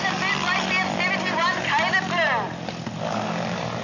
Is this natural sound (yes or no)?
yes